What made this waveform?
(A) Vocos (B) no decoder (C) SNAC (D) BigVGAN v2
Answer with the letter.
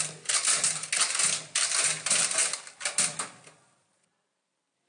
B